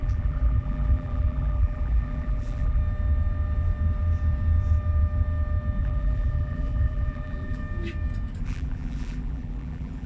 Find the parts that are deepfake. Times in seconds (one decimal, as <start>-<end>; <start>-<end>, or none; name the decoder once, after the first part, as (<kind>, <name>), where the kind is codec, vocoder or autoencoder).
0.0-2.8 (vocoder, BigVGAN v2); 5.8-7.6; 8.4-10.1